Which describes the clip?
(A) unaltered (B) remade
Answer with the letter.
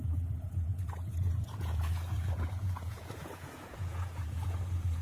B